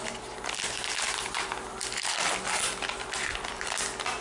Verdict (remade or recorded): recorded